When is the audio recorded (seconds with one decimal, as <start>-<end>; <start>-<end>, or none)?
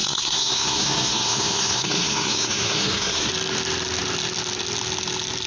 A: 3.3-5.5